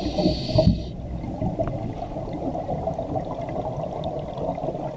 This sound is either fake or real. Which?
real